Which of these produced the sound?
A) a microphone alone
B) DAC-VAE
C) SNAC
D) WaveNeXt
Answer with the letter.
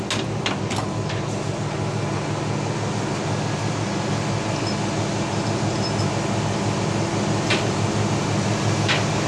A